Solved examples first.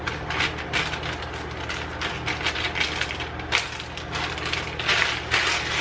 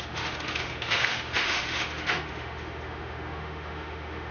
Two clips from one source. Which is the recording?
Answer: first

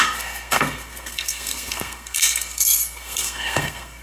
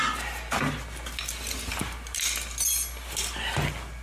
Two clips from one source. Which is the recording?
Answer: second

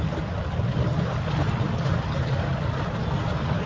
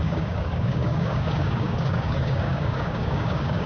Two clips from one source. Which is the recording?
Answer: first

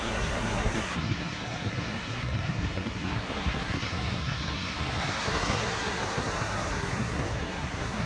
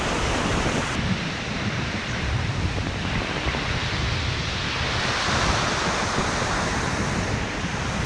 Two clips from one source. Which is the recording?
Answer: second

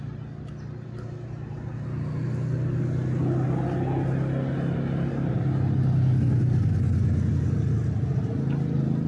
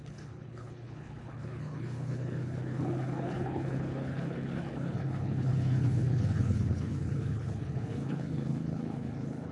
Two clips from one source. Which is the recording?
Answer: first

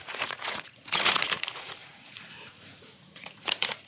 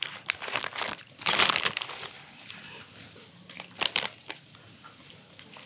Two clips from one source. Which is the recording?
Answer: second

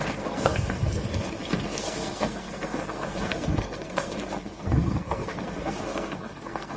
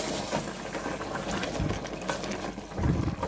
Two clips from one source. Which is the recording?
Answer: second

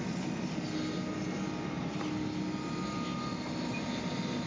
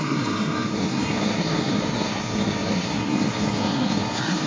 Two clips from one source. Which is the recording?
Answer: first